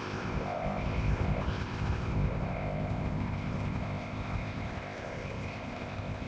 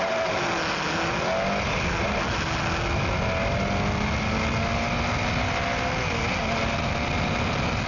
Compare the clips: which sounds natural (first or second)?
second